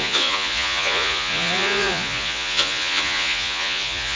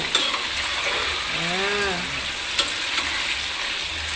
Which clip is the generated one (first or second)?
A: first